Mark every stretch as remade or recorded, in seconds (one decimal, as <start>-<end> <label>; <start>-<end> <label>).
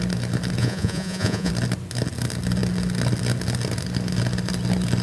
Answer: 0.0-0.6 recorded; 0.6-1.5 remade; 1.5-5.0 recorded